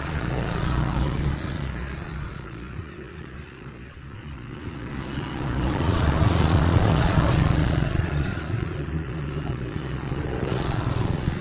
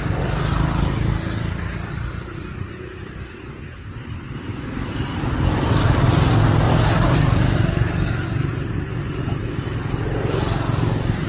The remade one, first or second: first